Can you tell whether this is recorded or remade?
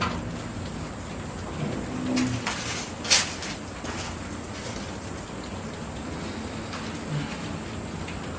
recorded